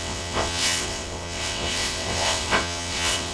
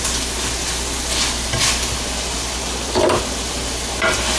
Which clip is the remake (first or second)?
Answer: first